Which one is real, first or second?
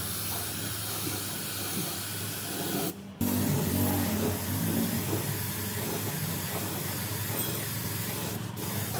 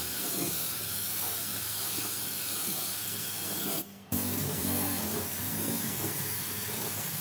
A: first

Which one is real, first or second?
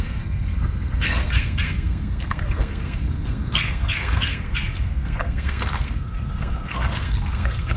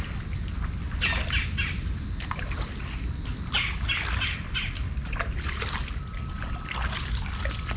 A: second